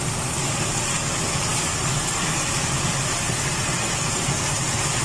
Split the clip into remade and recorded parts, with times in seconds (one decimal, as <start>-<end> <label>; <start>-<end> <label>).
0.0-5.0 recorded